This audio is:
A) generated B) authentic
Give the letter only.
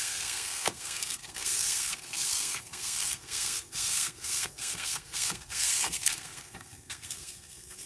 A